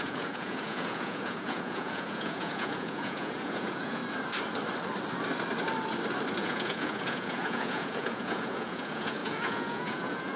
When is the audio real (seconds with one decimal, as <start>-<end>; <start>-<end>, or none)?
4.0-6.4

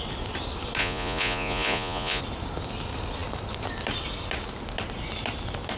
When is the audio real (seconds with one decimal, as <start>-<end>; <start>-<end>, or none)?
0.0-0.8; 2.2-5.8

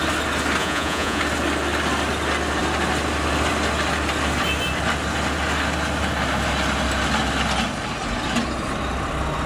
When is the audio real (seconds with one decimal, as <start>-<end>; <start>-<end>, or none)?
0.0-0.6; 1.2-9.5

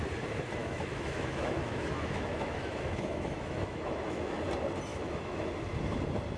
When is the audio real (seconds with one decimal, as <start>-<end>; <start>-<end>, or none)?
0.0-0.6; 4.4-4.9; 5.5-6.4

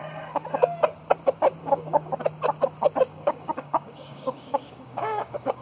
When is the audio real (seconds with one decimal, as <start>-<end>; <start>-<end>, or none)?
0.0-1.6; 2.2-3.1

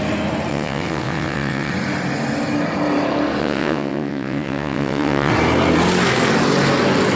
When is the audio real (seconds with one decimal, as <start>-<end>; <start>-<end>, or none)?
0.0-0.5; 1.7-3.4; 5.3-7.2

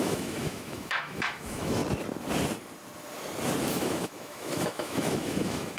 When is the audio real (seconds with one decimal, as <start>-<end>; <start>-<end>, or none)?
1.8-3.7

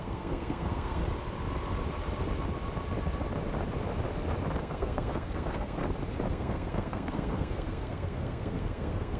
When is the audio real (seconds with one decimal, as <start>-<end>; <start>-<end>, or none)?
1.0-4.6; 5.8-6.3